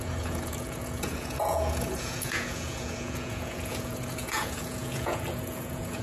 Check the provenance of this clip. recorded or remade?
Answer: remade